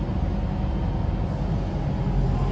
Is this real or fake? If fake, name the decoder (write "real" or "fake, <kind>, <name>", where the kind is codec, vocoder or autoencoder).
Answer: real